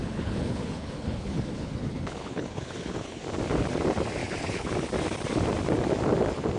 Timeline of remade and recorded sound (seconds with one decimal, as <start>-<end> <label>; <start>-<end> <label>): 0.0-3.2 remade; 3.2-4.2 recorded; 4.2-4.7 remade; 4.7-6.6 recorded